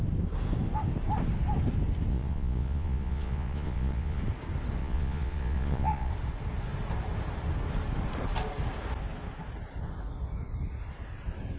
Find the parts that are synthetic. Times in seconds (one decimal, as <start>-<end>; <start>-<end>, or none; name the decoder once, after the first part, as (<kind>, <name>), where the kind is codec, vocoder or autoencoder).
2.1-4.2 (vocoder, Vocos); 4.8-6.1